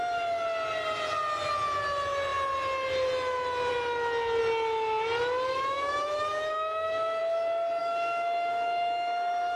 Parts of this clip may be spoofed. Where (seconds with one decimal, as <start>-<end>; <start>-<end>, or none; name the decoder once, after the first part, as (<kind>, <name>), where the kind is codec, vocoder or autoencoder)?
5.5-7.2 (autoencoder, DAC-VAE); 7.8-9.6